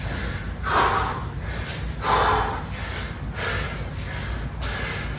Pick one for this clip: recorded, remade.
recorded